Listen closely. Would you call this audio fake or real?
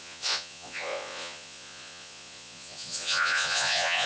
fake